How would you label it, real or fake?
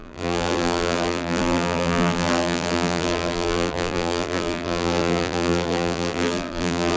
fake